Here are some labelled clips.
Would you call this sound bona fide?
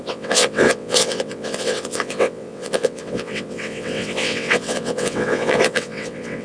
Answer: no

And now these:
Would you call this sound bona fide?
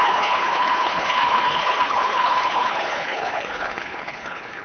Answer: no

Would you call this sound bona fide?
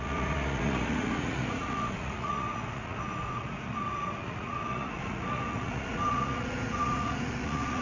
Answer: no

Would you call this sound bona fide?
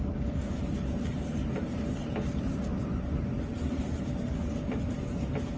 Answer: yes